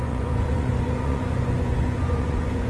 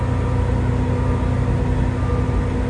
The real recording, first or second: second